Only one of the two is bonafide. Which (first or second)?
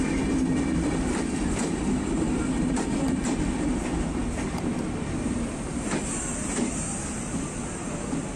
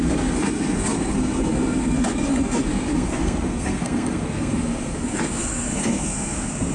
first